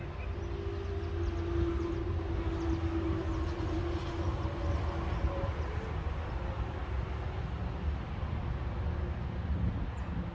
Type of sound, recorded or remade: recorded